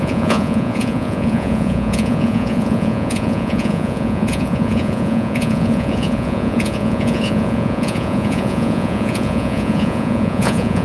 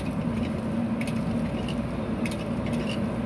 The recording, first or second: second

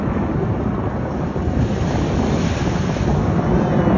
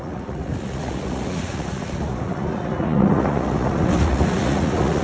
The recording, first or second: first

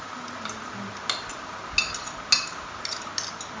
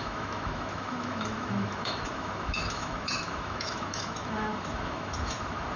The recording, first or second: first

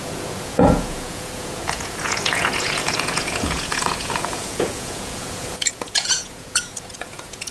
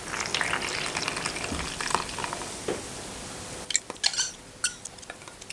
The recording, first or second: second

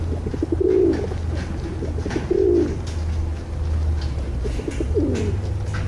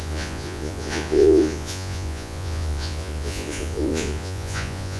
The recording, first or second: first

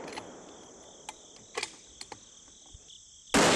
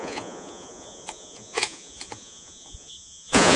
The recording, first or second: first